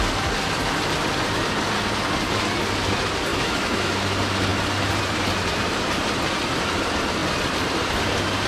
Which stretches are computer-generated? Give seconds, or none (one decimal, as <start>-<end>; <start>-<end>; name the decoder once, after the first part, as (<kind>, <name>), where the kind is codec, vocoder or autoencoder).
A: 3.3-3.9 (autoencoder, DAC-VAE)